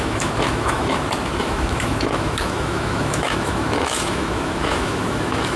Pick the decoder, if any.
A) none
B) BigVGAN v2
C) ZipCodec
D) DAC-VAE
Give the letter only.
D